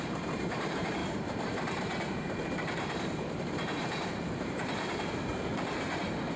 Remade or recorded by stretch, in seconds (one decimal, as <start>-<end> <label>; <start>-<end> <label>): 0.0-5.3 remade; 5.3-5.9 recorded; 5.9-6.4 remade